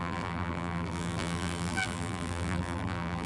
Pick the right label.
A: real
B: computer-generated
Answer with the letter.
B